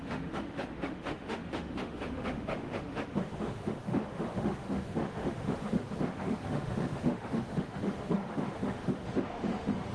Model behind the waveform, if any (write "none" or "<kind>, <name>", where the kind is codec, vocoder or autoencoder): autoencoder, DAC-VAE